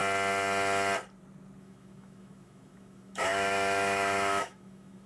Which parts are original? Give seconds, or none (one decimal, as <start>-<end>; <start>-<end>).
0.0-1.6